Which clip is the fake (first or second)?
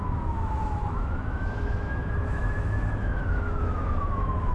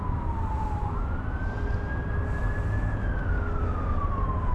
first